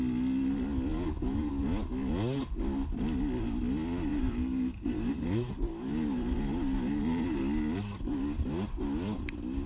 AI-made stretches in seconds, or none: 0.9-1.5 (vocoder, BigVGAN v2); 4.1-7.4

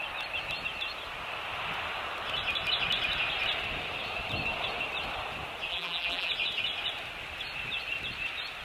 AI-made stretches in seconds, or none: 5.7-6.3 (vocoder, BigVGAN v2)

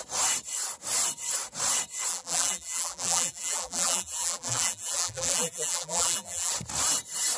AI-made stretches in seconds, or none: 2.1-6.5 (vocoder, BigVGAN v2)

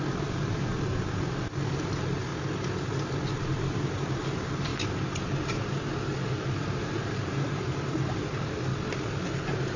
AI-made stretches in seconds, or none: 0.0-2.3 (vocoder, BigVGAN v2); 3.4-4.7; 5.7-8.7; 9.4-9.8

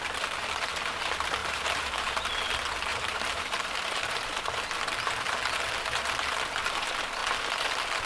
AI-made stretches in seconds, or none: 1.4-2.3 (vocoder, BigVGAN v2); 2.9-4.6

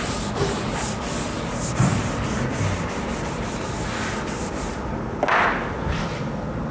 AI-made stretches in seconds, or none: none

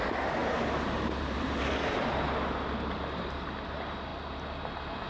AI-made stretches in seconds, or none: 0.4-1.6 (vocoder, BigVGAN v2)